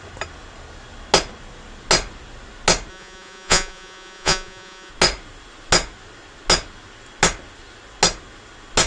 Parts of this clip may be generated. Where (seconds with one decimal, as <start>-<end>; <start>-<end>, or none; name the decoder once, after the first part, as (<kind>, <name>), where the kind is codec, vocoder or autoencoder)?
2.9-4.9 (vocoder, Vocos)

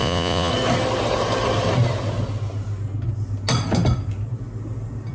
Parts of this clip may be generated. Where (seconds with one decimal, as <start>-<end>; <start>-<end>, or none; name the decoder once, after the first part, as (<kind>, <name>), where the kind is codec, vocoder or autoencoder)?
0.0-0.5 (vocoder, Vocos)